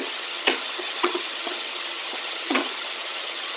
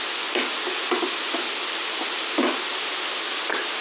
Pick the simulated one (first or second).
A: first